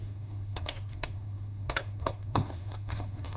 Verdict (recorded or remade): remade